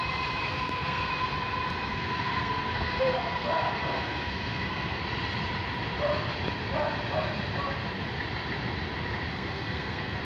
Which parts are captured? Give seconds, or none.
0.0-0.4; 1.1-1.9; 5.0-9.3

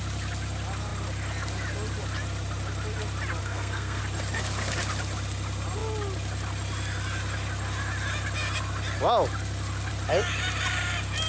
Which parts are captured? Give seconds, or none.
0.0-3.4; 4.0-11.3

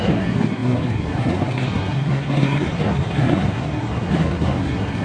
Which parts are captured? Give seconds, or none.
none

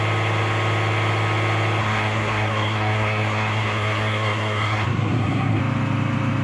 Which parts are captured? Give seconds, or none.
0.0-1.8; 5.6-6.4

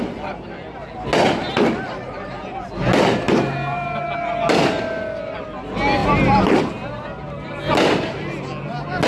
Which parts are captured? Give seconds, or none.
0.0-9.1